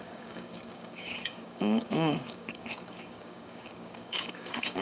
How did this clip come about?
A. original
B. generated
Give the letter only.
B